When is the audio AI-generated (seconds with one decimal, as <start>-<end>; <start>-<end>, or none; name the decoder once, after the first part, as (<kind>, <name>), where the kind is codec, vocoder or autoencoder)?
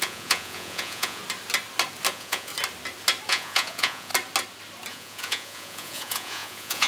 0.0-1.2 (vocoder, Vocos); 2.1-2.5; 3.3-4.1; 4.9-6.9